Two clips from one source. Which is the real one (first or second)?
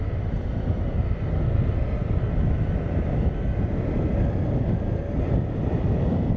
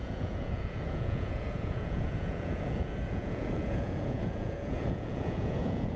first